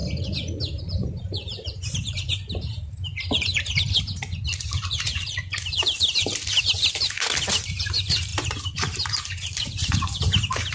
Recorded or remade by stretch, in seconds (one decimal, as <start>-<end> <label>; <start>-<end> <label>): 0.0-0.8 recorded; 0.8-10.7 remade